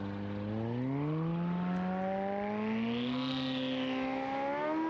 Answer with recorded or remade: recorded